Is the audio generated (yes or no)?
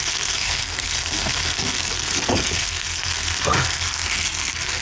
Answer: yes